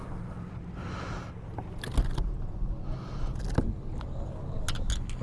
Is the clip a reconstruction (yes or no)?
no